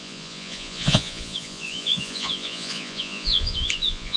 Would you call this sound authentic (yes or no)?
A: no